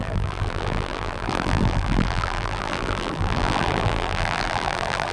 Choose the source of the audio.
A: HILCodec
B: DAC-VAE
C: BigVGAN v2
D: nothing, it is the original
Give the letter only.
C